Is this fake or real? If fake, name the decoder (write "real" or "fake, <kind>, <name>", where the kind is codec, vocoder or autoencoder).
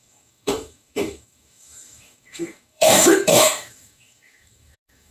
fake, codec, DAC